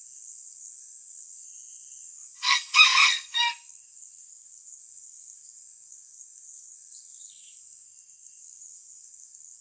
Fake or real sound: fake